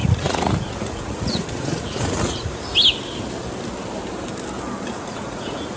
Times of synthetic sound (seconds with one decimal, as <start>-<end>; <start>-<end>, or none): 0.0-2.6; 5.0-5.8